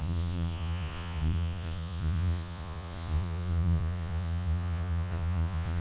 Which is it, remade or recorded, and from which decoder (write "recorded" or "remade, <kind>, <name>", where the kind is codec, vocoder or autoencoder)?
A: remade, vocoder, Vocos